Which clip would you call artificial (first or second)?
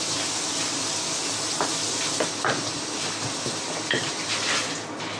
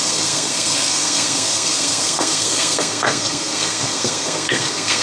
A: second